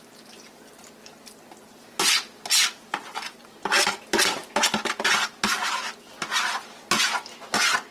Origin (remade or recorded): recorded